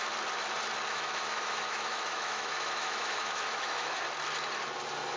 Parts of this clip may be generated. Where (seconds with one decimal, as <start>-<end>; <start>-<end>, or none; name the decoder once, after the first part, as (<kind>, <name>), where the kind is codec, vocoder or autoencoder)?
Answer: 0.9-4.0 (autoencoder, DAC-VAE)